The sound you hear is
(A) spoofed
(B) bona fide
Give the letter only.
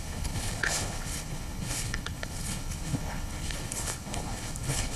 A